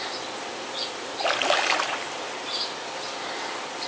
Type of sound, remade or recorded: recorded